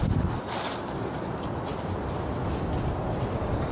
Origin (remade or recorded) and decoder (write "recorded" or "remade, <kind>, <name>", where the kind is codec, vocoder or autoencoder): remade, vocoder, BigVGAN v2